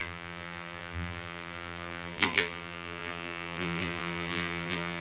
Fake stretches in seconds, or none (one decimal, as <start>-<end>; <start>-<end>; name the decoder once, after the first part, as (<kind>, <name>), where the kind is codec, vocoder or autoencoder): 0.0-5.0 (vocoder, BigVGAN v2)